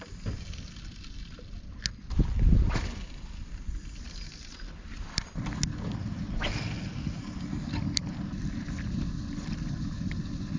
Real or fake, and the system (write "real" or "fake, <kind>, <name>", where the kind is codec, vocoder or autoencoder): real